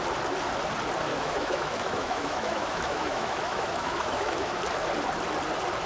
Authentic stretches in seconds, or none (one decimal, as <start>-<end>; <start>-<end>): 0.0-1.1; 4.6-5.9